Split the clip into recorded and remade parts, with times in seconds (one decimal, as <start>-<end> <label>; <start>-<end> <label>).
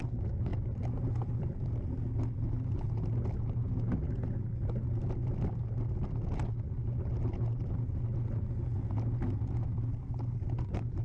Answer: 0.0-11.0 recorded